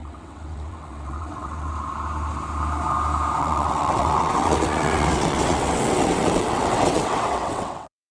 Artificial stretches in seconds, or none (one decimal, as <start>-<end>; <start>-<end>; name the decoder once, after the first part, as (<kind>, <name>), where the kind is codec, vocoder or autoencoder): 0.0-1.7 (vocoder, WaveNeXt); 3.4-8.1